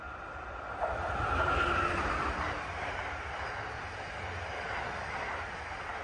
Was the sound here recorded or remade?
recorded